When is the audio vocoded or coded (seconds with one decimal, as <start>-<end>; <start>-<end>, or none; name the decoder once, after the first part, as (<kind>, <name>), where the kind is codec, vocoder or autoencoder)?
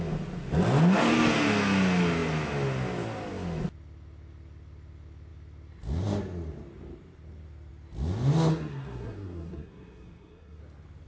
8.5-10.6 (codec, SNAC)